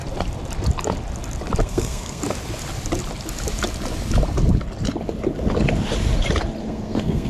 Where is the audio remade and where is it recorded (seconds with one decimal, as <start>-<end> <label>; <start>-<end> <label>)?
0.0-1.6 recorded; 1.6-2.2 remade; 2.2-6.6 recorded; 6.6-7.3 remade